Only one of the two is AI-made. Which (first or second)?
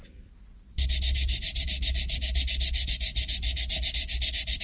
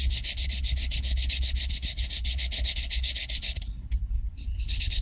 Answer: second